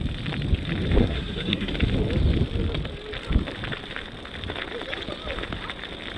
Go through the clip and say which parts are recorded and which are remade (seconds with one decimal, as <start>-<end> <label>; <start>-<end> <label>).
0.0-1.0 recorded; 1.0-1.7 remade; 1.7-6.2 recorded